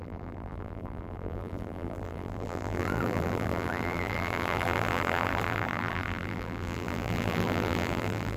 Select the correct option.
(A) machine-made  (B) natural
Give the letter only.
A